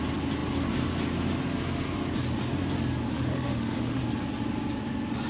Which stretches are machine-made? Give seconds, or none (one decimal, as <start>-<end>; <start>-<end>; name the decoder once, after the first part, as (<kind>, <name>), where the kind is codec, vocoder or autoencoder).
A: 3.1-4.0 (autoencoder, DAC-VAE)